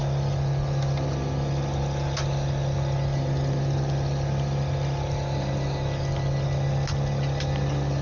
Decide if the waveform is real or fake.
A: real